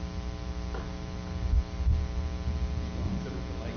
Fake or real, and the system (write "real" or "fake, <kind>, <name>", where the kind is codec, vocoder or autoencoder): real